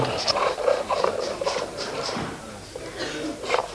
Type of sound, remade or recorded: remade